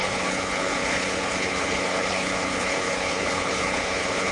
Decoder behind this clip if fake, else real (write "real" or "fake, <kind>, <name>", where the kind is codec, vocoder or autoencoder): fake, codec, HILCodec